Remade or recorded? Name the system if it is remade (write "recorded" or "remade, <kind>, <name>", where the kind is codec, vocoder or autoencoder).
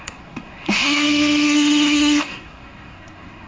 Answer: remade, codec, SNAC